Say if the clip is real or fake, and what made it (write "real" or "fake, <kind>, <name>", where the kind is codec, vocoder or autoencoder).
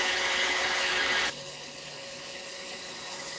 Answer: fake, codec, HILCodec